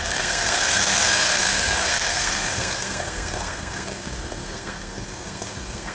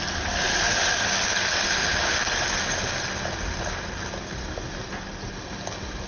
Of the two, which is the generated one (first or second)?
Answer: first